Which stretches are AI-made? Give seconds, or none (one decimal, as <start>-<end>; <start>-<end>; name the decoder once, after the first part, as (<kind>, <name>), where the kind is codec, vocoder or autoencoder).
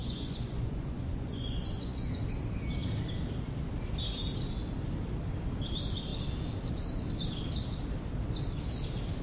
0.0-2.2 (vocoder, Vocos)